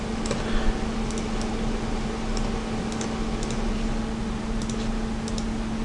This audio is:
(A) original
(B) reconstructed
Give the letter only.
A